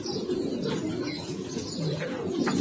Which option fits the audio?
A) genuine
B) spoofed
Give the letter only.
B